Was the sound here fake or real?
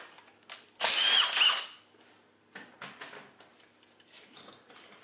real